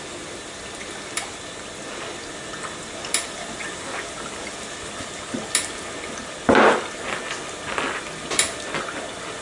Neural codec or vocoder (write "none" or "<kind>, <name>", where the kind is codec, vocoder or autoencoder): none